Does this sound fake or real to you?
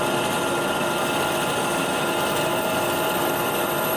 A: real